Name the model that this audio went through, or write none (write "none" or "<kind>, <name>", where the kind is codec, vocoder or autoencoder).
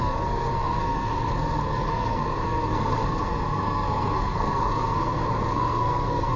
codec, SNAC